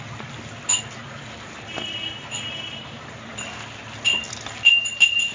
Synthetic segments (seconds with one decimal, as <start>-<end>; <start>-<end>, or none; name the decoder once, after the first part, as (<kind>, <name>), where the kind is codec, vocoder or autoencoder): none